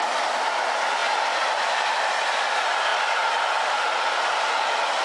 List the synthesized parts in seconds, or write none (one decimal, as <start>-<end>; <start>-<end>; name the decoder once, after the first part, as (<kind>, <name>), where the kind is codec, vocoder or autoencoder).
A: none